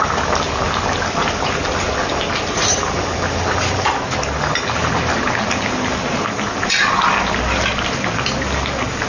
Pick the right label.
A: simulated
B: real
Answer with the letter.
B